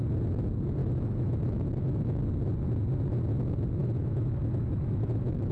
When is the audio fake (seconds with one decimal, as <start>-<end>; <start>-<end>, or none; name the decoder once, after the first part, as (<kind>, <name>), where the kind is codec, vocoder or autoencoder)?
0.8-2.2 (autoencoder, DAC-VAE); 3.8-5.5